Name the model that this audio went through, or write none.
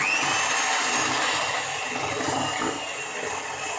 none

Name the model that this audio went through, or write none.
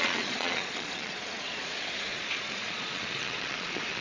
vocoder, Vocos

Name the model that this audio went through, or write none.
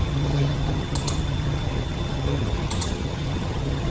vocoder, HiFi-GAN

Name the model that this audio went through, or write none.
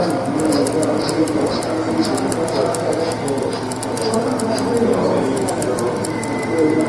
none